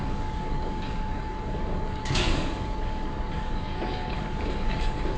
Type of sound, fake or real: fake